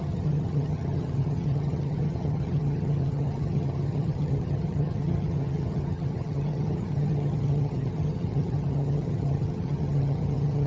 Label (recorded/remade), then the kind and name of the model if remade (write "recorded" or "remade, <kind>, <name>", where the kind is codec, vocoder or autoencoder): remade, vocoder, HiFi-GAN